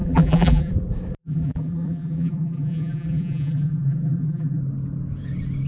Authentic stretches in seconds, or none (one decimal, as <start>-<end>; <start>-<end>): 0.7-1.2; 4.6-5.7